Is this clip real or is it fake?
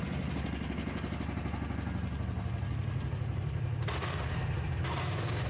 real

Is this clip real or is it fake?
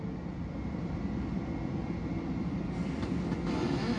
real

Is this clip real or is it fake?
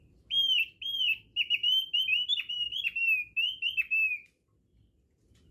real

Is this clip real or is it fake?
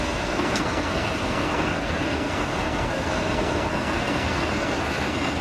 fake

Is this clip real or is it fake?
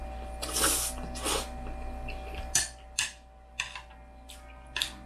real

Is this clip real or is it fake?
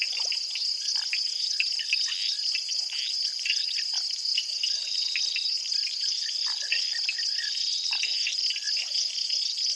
real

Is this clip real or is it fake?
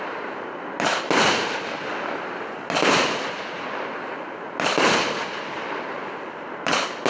real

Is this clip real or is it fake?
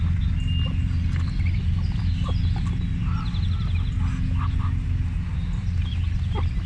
real